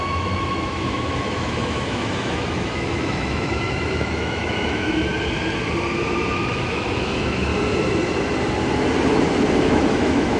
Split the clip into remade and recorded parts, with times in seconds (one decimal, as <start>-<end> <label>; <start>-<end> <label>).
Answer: 0.0-5.1 remade; 5.1-6.4 recorded; 6.4-7.5 remade; 7.5-9.6 recorded; 9.6-10.4 remade